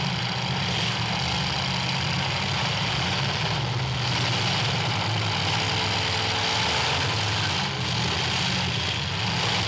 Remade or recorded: recorded